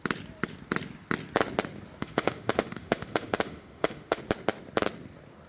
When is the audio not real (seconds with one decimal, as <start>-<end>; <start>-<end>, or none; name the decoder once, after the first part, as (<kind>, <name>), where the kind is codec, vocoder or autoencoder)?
2.0-4.2 (autoencoder, DAC-VAE)